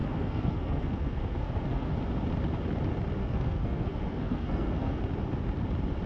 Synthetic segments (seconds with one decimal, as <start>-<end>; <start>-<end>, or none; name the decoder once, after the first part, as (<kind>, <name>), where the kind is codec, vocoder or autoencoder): 0.0-1.9 (codec, SNAC); 3.2-5.0